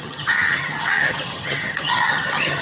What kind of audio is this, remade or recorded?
remade